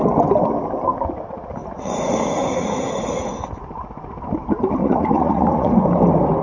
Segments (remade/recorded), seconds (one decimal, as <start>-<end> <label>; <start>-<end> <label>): 0.0-1.6 recorded; 1.6-3.4 remade; 3.4-4.8 recorded; 4.8-5.7 remade; 5.7-6.4 recorded